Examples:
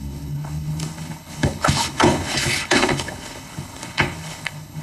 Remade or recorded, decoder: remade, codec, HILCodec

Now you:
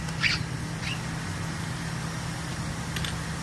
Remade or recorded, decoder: recorded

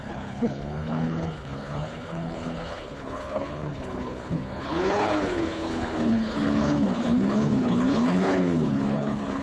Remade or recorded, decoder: remade, codec, HILCodec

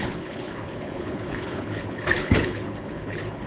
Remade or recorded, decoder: remade, codec, HILCodec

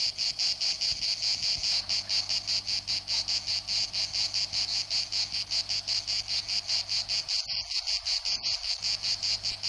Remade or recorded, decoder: recorded